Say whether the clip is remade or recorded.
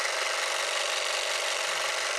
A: recorded